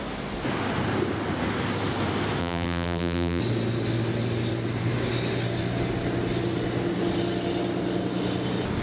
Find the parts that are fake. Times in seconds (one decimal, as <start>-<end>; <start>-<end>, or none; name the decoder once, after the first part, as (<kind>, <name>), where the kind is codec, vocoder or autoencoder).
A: 2.4-3.4 (vocoder, BigVGAN v2)